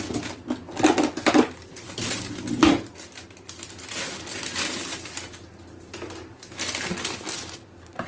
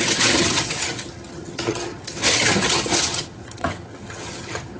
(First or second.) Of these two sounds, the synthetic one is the second